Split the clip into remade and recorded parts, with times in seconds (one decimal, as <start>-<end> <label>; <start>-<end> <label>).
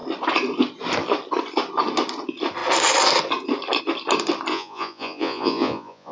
0.0-4.5 recorded; 4.5-6.1 remade